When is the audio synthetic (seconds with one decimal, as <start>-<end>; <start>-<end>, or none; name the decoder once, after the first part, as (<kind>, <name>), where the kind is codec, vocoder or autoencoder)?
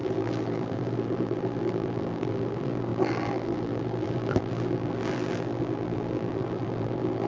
0.0-7.3 (vocoder, BigVGAN v2)